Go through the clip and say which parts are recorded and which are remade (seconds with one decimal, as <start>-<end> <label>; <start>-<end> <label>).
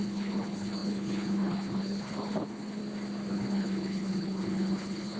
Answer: 0.0-2.8 remade; 2.8-3.3 recorded; 3.3-5.2 remade